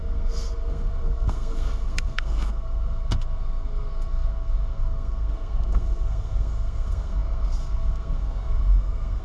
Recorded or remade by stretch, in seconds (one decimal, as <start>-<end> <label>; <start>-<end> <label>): 0.0-9.2 remade